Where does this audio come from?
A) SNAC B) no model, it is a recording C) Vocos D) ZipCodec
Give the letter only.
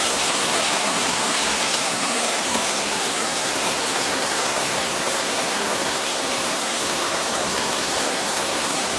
A